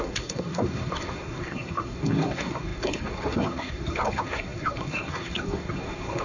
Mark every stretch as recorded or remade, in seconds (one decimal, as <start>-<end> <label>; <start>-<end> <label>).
0.0-6.2 remade